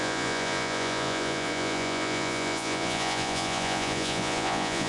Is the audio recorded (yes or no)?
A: no